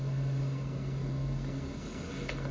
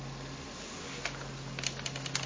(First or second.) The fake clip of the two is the first